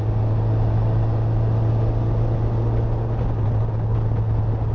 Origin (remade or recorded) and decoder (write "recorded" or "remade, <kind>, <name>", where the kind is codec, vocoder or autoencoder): recorded